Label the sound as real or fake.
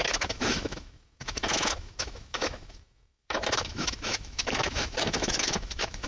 fake